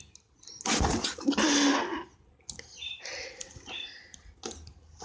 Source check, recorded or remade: recorded